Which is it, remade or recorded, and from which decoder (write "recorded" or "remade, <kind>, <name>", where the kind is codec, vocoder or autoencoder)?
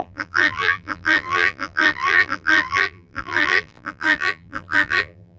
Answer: remade, vocoder, BigVGAN v2